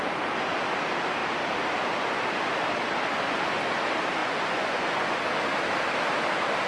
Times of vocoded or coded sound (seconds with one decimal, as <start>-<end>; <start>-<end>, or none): 4.2-5.2